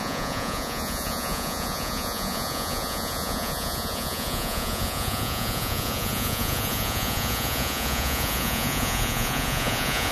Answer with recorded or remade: remade